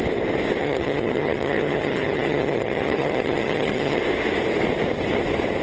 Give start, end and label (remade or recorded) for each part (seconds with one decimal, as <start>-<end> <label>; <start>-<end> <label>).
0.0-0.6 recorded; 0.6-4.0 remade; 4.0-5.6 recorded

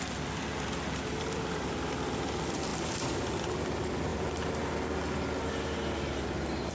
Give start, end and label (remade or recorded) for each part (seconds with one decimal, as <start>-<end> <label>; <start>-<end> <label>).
0.0-6.7 recorded

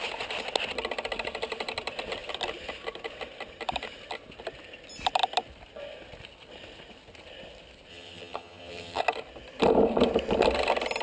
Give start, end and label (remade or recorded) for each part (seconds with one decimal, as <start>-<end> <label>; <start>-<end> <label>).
0.0-7.9 recorded; 7.9-9.0 remade; 9.0-11.0 recorded

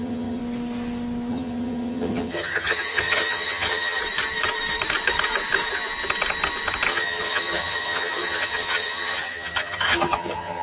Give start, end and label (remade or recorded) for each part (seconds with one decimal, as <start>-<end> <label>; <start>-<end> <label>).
0.0-0.4 remade; 0.4-1.3 recorded; 1.3-4.0 remade; 4.0-6.9 recorded; 6.9-10.6 remade

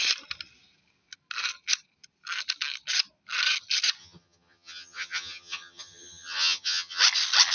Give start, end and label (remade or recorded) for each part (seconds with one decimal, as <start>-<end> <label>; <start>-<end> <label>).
0.0-4.0 recorded; 4.0-7.0 remade; 7.0-7.5 recorded

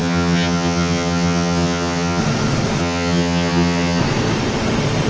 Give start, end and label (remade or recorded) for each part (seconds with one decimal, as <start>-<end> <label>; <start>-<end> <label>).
0.0-2.2 remade; 2.2-2.8 recorded; 2.8-4.0 remade; 4.0-5.1 recorded

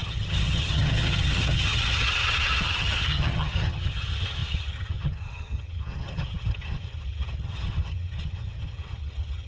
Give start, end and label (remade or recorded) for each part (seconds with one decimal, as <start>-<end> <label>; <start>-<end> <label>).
0.0-9.5 remade